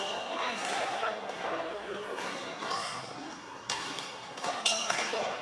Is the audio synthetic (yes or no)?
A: yes